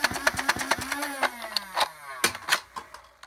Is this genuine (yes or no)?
yes